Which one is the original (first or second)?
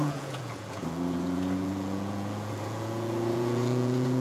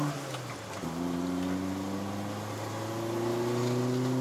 second